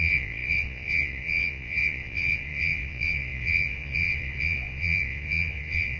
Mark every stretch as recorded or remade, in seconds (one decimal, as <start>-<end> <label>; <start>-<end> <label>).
0.0-6.0 remade